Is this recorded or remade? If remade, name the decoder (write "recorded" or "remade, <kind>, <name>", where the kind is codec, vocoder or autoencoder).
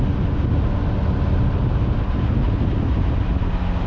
recorded